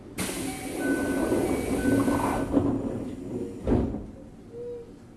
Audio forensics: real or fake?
real